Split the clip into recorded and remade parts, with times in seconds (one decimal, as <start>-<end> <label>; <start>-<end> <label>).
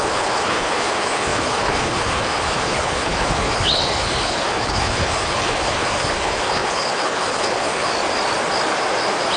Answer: 0.0-7.9 remade; 7.9-9.4 recorded